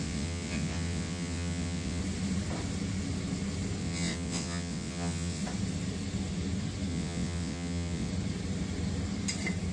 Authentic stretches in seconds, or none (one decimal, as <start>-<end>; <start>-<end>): 2.0-3.8; 5.4-6.9; 8.1-9.7